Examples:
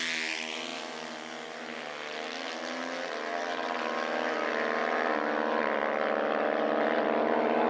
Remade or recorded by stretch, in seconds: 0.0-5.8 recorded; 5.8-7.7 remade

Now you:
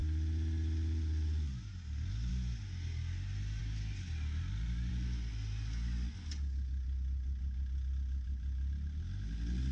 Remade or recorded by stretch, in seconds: 0.0-9.7 recorded